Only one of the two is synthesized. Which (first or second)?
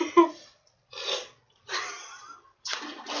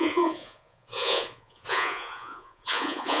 second